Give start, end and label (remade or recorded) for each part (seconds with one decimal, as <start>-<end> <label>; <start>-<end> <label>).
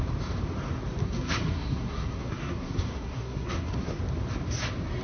0.0-1.0 recorded; 1.0-4.0 remade; 4.0-5.0 recorded